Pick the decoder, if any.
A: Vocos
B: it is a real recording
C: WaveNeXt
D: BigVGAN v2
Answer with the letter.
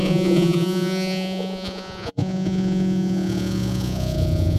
A